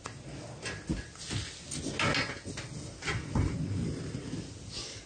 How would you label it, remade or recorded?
recorded